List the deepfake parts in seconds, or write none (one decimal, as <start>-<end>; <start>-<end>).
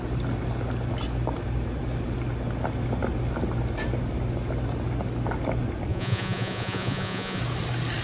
5.9-7.4